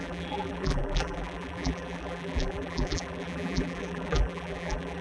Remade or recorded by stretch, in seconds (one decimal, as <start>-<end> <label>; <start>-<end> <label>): 0.0-5.0 remade